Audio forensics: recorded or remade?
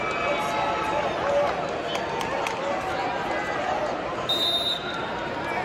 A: recorded